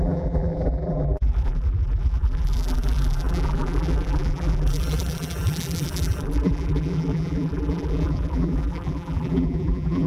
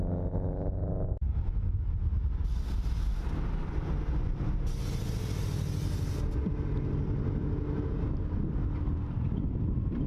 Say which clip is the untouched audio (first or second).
second